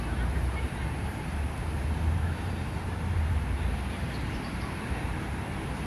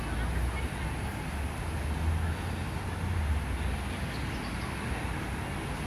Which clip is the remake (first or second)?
first